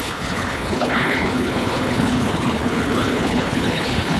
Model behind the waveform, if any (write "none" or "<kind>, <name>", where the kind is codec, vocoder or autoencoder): codec, HILCodec